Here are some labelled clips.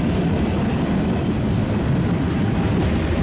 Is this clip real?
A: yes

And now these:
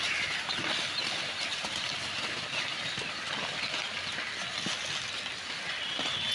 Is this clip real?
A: yes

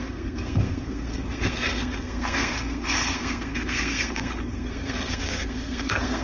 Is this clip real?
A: no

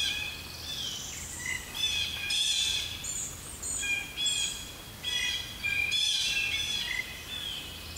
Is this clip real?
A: yes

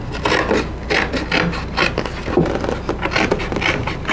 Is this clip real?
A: yes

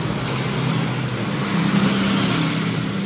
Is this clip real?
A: yes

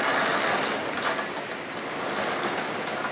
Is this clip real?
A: yes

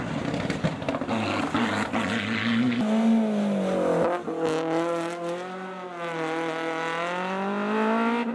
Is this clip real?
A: yes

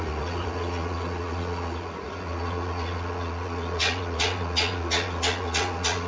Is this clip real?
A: no